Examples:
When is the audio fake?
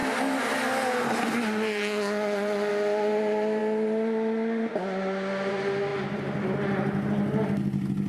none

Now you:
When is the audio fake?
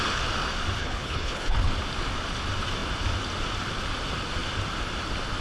0.8-1.7